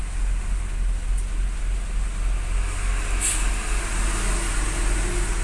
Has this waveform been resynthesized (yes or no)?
no